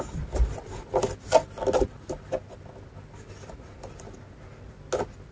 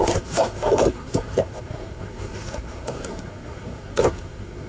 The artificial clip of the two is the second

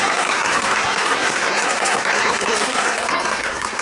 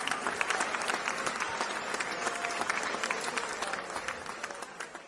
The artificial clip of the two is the first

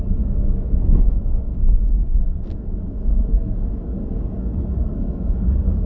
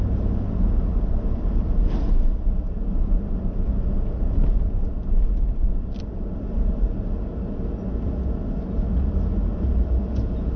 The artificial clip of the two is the first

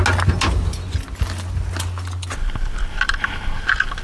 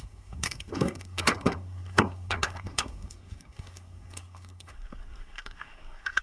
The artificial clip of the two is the second